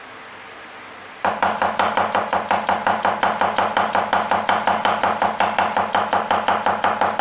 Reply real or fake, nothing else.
real